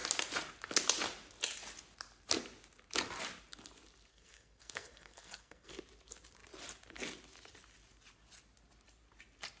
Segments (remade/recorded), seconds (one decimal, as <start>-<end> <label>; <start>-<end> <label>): 0.0-4.1 recorded; 4.1-5.8 remade; 5.8-9.6 recorded

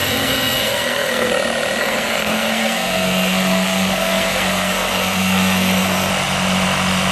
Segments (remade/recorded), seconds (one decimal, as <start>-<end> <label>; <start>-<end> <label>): 0.0-1.3 remade; 1.3-1.8 recorded; 1.8-6.1 remade; 6.1-7.1 recorded

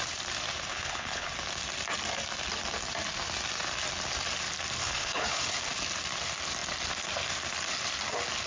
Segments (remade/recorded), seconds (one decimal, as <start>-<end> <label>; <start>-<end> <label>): 0.0-0.7 recorded; 0.7-1.3 remade; 1.3-4.8 recorded; 4.8-5.6 remade; 5.6-8.5 recorded

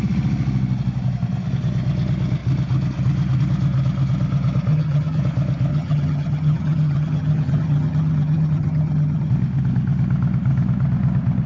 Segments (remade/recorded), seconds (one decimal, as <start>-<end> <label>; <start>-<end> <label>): 0.0-4.7 recorded; 4.7-5.2 remade; 5.2-5.7 recorded; 5.7-9.3 remade; 9.3-11.5 recorded

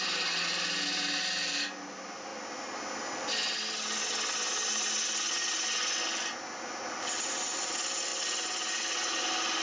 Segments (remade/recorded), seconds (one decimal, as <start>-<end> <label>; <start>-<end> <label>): 0.0-9.6 recorded